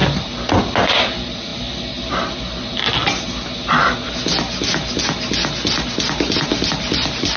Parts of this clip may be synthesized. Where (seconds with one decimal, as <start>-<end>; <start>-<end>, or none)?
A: 0.0-3.0; 6.7-7.4